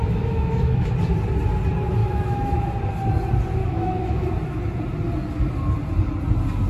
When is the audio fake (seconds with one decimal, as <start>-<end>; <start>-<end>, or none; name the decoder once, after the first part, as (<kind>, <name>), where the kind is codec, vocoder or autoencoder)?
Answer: 0.0-0.9 (autoencoder, DAC-VAE); 2.0-2.7; 3.6-4.3